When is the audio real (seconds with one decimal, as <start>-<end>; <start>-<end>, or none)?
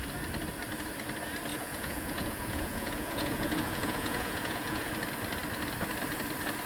0.0-1.5; 4.9-6.7